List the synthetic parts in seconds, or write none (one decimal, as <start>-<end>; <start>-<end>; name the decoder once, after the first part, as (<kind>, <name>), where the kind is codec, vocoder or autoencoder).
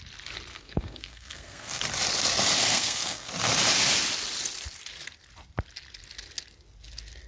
0.5-1.8 (codec, SNAC); 2.7-3.3